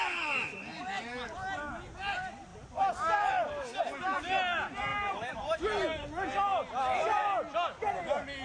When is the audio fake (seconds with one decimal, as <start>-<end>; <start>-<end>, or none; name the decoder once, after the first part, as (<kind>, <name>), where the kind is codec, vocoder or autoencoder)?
2.5-3.8 (vocoder, BigVGAN v2); 4.9-5.8